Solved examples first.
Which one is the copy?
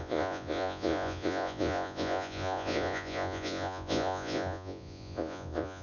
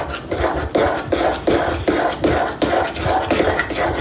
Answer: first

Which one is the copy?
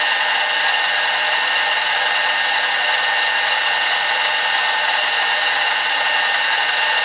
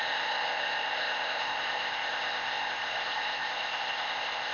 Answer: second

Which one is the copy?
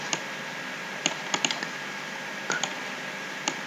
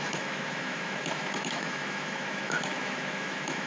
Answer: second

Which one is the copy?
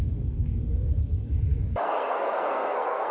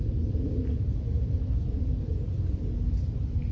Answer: first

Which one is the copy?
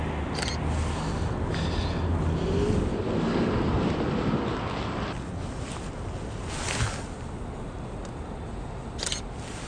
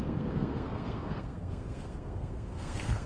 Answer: second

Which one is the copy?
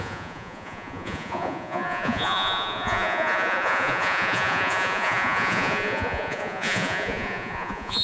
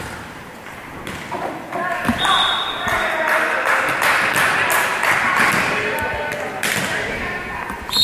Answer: first